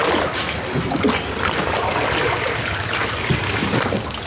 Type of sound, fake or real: real